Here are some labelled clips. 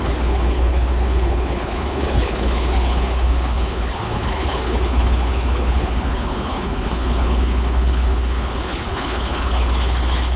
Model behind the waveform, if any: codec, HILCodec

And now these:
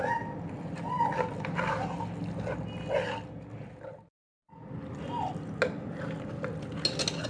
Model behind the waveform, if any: none